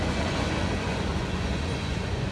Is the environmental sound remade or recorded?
remade